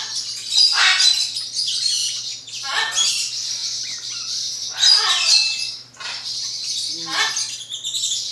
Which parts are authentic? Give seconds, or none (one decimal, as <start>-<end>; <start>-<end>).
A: 0.0-2.0; 3.1-3.6; 7.3-8.3